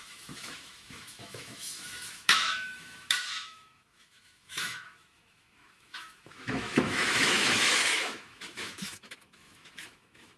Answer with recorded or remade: remade